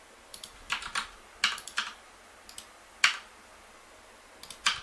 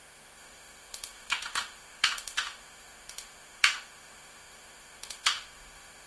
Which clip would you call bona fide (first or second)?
first